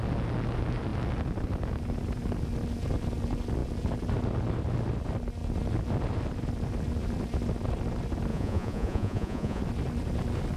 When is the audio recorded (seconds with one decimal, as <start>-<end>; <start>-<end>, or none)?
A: 0.0-8.3; 9.6-10.6